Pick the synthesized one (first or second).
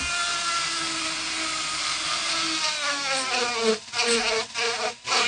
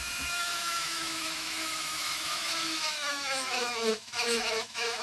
second